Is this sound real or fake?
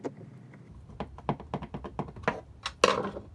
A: real